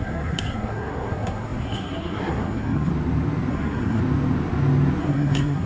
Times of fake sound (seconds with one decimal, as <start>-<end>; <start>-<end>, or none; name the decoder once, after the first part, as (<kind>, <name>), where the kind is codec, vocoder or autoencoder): 0.0-2.9 (codec, SNAC); 3.5-4.0; 5.0-5.7